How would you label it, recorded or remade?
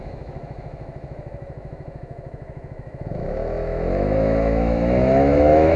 remade